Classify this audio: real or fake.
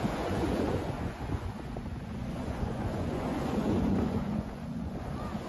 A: fake